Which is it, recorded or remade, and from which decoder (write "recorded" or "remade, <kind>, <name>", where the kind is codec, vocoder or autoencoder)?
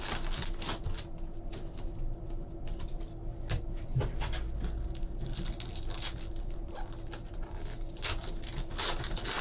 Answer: recorded